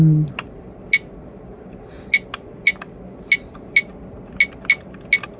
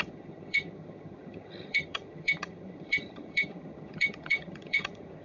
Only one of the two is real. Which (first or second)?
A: first